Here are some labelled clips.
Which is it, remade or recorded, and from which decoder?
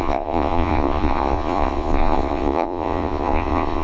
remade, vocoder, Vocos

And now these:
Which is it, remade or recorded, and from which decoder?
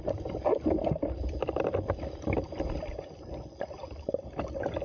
recorded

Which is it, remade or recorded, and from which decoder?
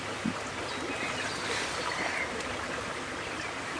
recorded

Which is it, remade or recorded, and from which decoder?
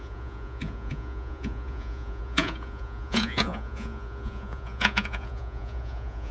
remade, vocoder, Vocos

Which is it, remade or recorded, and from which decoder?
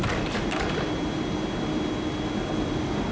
recorded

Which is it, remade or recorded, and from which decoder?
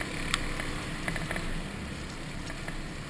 recorded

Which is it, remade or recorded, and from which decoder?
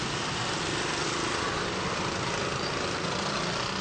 recorded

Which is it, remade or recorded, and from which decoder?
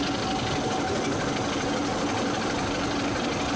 recorded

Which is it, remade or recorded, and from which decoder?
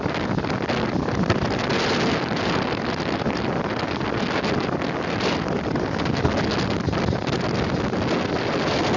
recorded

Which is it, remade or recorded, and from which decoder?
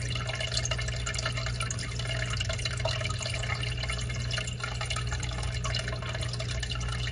recorded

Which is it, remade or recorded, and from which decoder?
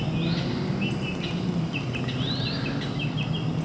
recorded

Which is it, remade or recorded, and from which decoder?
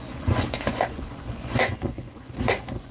remade, vocoder, Vocos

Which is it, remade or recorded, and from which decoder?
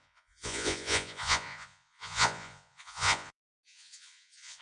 remade, vocoder, Vocos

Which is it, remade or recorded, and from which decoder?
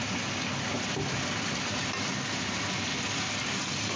recorded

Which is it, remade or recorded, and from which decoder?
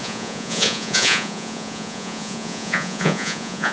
remade, vocoder, Vocos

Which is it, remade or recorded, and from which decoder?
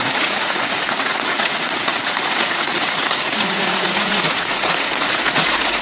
remade, vocoder, Vocos